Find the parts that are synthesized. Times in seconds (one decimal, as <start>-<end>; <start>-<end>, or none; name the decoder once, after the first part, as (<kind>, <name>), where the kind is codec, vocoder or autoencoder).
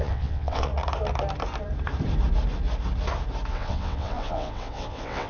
0.0-0.7 (vocoder, WaveNeXt); 3.5-5.3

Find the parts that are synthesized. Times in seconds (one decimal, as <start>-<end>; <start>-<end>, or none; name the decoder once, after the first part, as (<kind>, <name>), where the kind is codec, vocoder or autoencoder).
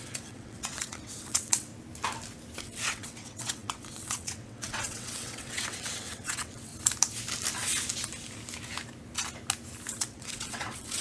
0.0-1.7 (vocoder, WaveNeXt); 2.6-6.7; 9.9-11.0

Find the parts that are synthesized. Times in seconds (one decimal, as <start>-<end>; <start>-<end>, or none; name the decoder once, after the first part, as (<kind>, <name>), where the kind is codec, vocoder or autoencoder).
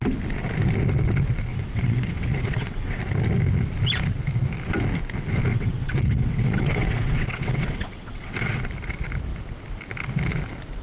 1.5-3.0 (vocoder, WaveNeXt); 5.5-8.6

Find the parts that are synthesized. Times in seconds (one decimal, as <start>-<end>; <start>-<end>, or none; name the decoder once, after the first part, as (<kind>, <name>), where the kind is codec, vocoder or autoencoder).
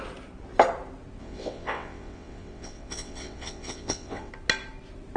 1.2-4.3 (vocoder, WaveNeXt)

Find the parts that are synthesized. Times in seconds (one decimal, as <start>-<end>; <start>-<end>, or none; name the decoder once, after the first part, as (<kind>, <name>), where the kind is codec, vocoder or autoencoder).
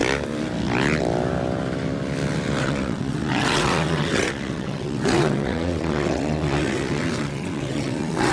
2.6-8.3 (vocoder, WaveNeXt)